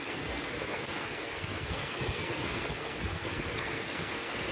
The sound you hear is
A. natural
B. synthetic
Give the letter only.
B